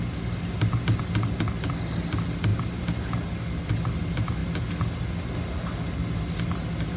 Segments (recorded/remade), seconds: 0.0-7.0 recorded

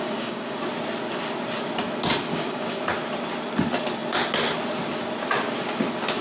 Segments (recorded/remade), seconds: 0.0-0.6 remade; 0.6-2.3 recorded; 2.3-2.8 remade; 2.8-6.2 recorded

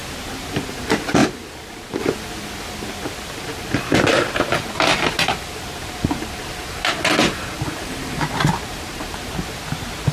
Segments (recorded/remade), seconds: 0.0-1.2 recorded; 1.2-2.0 remade; 2.0-4.1 recorded; 4.1-9.3 remade; 9.3-10.1 recorded

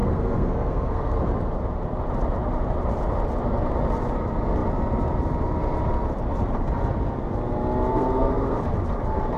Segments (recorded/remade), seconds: 0.0-1.2 remade; 1.2-7.9 recorded; 7.9-8.6 remade; 8.6-9.4 recorded

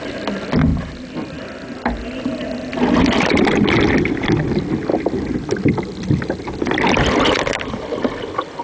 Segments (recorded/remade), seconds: 0.0-8.6 recorded

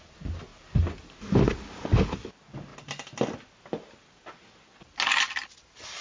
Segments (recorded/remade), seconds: 0.0-6.0 recorded

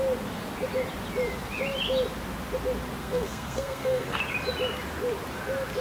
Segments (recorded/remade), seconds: 0.0-3.0 recorded; 3.0-4.2 remade; 4.2-5.8 recorded

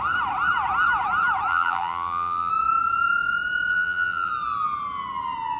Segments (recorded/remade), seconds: 0.0-1.5 recorded; 1.5-2.5 remade; 2.5-3.7 recorded; 3.7-4.3 remade; 4.3-5.6 recorded